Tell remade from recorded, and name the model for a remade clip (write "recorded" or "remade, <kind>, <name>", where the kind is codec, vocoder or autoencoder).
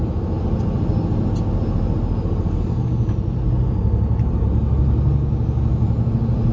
recorded